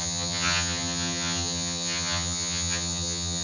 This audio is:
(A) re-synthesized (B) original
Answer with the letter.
A